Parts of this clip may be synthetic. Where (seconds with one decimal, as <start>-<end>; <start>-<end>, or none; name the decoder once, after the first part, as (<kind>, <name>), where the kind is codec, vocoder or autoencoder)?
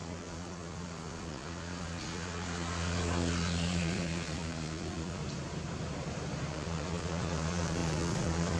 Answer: 0.0-5.2 (vocoder, Vocos); 6.5-8.6